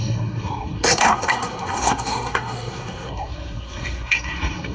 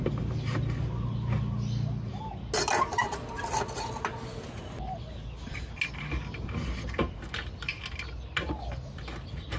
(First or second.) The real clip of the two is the second